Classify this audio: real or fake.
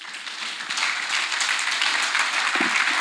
real